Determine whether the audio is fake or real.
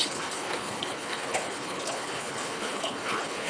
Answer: fake